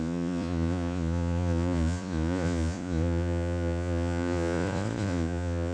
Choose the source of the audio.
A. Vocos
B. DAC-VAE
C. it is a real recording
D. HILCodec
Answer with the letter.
A